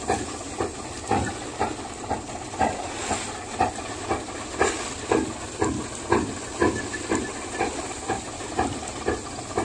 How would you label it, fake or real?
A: real